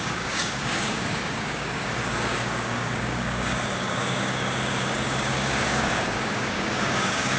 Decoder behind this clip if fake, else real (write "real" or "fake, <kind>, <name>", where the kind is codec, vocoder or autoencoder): fake, codec, DAC